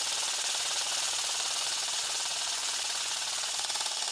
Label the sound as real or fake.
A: fake